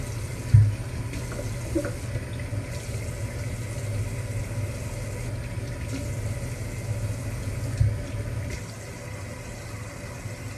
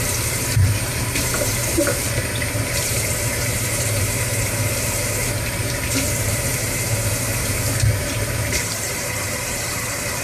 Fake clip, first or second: second